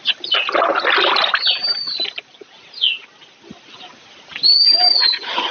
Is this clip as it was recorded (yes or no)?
yes